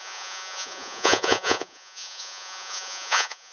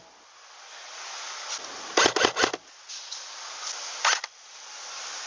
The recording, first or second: second